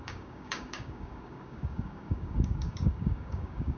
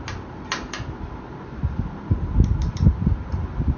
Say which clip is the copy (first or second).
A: first